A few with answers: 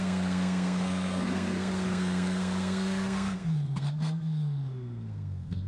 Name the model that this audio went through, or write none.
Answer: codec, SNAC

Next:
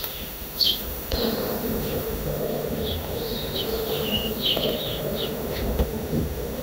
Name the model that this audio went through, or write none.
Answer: autoencoder, DAC-VAE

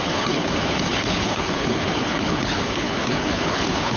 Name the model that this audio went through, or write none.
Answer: codec, HILCodec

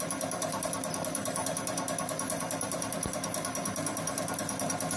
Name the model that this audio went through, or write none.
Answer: vocoder, BigVGAN v2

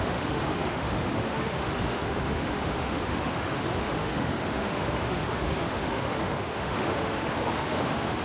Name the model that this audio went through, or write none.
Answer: autoencoder, DAC-VAE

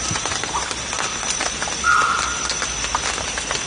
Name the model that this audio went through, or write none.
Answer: none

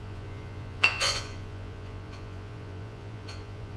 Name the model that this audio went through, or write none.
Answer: vocoder, Vocos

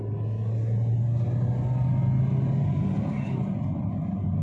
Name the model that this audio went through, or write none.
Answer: none